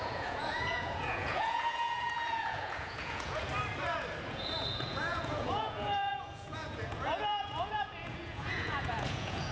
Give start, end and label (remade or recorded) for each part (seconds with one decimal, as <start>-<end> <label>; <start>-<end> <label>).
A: 0.0-3.5 remade; 3.5-4.3 recorded; 4.3-9.5 remade